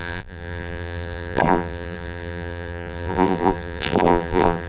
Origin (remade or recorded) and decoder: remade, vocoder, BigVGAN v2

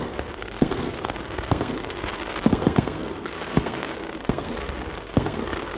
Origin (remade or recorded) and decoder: remade, codec, SNAC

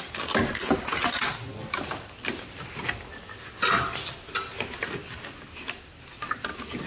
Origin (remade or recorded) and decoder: recorded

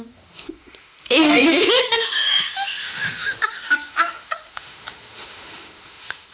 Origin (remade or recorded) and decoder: remade, autoencoder, DAC-VAE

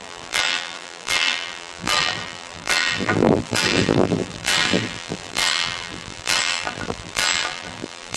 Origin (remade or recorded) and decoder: remade, vocoder, BigVGAN v2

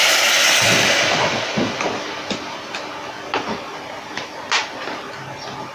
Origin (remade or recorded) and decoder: recorded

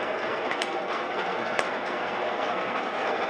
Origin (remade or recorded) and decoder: remade, codec, SNAC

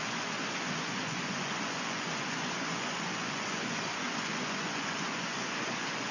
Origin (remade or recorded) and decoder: remade, vocoder, Vocos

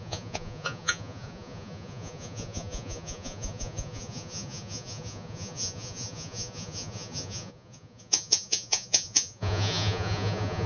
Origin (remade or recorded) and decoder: remade, vocoder, Vocos